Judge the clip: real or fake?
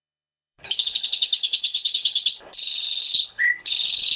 fake